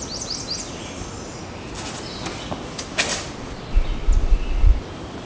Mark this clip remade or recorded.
recorded